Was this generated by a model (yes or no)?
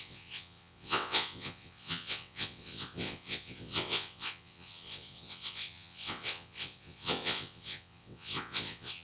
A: yes